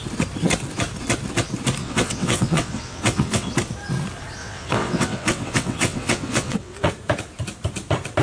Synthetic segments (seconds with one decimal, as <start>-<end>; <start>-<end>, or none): 1.8-3.5; 4.4-6.9